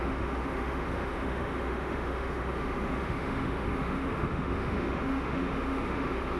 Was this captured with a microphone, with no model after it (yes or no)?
no